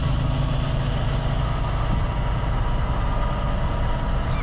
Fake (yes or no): no